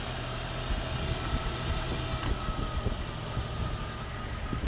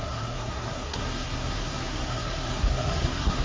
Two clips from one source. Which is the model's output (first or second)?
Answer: second